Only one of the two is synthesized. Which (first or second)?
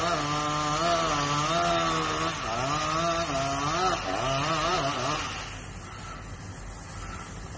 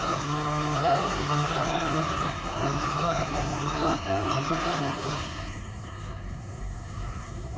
second